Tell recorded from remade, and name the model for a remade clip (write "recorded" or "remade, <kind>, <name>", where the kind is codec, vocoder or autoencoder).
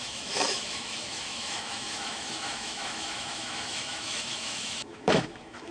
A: remade, autoencoder, DAC-VAE